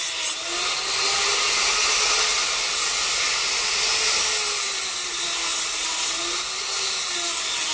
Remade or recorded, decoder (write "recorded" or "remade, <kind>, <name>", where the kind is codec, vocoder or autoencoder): recorded